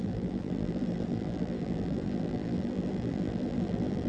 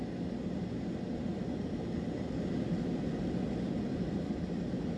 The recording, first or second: second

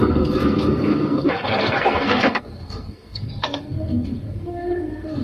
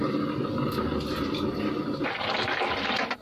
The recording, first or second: second